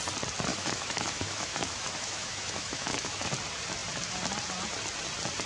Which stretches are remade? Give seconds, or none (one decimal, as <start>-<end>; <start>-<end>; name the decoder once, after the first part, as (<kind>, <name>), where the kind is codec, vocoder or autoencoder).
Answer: 0.5-3.3 (autoencoder, DAC-VAE)